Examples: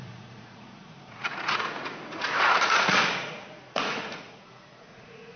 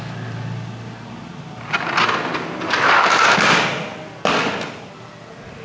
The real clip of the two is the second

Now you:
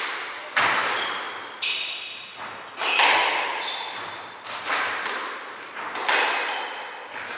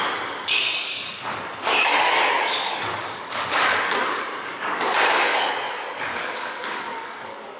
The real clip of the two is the first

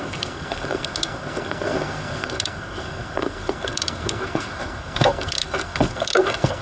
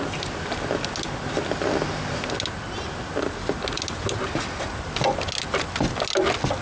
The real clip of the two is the second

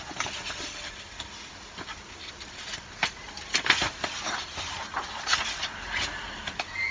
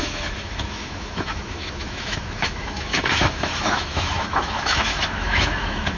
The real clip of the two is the first